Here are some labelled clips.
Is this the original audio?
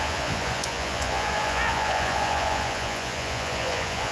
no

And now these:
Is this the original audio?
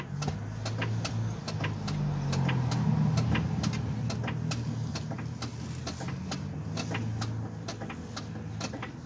yes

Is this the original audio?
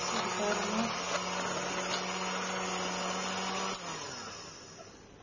yes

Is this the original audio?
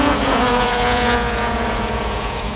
no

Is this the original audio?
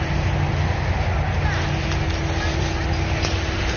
yes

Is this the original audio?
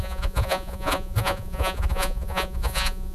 no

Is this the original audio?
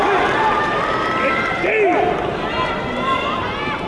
yes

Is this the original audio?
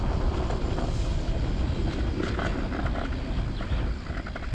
yes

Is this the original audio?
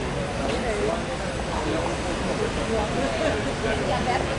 yes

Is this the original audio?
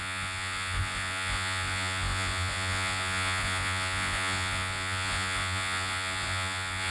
no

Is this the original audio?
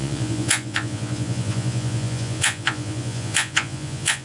no